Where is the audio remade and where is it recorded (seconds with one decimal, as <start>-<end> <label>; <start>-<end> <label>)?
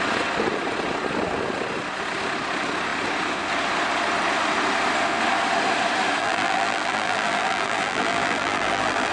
0.0-6.2 recorded; 6.2-9.1 remade